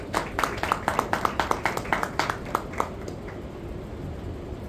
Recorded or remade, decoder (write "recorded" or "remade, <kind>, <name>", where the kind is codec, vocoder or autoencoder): recorded